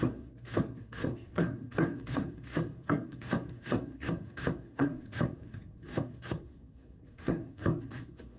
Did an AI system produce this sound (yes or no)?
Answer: yes